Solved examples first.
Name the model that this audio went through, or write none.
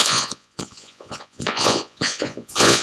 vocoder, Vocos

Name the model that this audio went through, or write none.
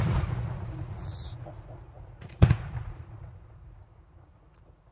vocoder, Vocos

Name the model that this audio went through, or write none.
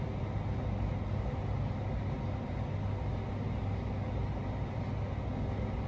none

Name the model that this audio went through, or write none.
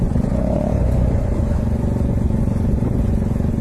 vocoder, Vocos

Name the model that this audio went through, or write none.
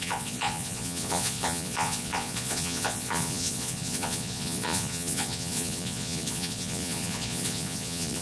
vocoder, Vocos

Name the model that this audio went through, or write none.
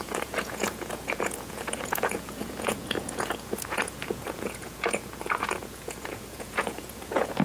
vocoder, Vocos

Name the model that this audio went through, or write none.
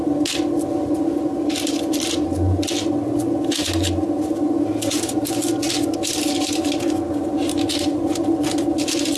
none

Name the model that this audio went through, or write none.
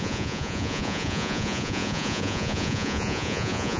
vocoder, Vocos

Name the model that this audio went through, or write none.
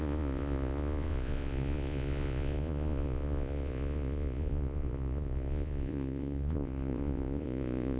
vocoder, Vocos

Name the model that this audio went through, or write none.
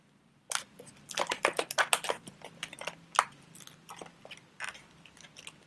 none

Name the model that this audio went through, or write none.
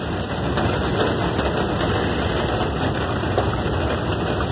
none